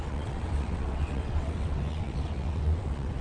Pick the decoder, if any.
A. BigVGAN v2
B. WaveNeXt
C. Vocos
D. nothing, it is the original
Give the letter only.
B